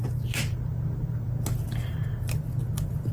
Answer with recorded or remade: recorded